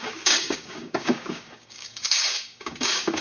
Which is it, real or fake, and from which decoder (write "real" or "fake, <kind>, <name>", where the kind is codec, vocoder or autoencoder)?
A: fake, codec, DAC